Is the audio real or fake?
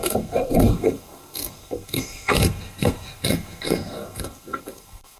fake